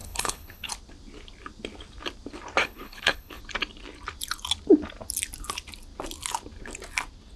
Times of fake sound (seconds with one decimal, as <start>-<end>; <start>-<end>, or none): 0.0-0.7; 2.6-3.4